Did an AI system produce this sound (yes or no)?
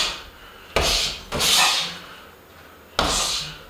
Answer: no